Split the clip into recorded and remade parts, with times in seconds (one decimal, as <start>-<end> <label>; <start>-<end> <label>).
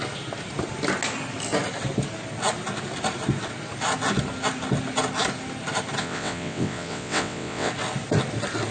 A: 0.0-6.0 recorded; 6.0-7.7 remade; 7.7-8.7 recorded